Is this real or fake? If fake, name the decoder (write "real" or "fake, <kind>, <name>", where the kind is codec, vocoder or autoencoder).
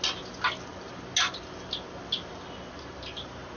real